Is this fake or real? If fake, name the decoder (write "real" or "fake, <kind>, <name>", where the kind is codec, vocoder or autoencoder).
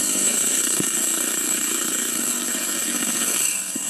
fake, codec, SNAC